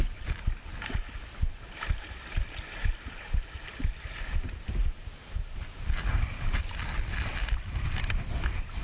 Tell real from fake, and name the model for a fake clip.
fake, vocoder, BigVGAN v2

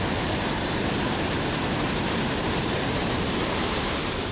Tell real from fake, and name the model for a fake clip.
fake, vocoder, BigVGAN v2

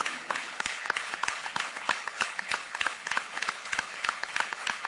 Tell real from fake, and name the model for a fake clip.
fake, codec, HILCodec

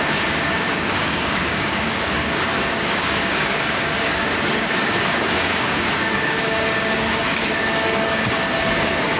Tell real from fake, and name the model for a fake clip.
fake, codec, DAC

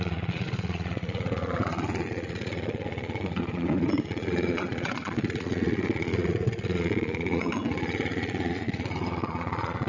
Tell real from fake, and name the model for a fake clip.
fake, vocoder, Vocos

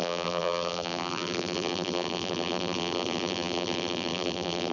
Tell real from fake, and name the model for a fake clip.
fake, vocoder, BigVGAN v2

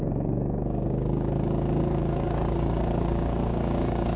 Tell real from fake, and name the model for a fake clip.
fake, codec, DAC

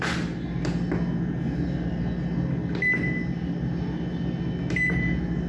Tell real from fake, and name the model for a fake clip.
real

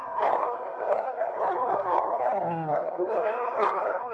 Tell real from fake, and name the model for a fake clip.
fake, codec, SNAC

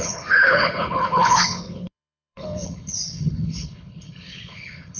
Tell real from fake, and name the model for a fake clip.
fake, codec, HILCodec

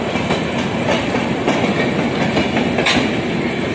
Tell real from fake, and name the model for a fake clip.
real